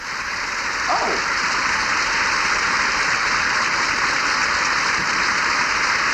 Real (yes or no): yes